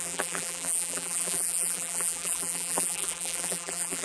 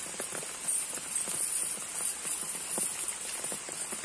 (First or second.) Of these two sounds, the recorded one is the second